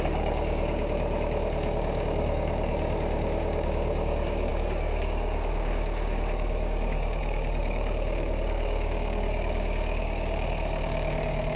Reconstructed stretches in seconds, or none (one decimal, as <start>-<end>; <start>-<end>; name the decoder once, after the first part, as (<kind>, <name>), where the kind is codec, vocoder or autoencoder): 0.0-11.6 (codec, DAC)